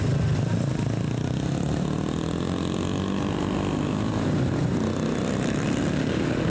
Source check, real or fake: real